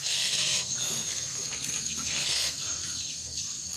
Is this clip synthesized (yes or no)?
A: yes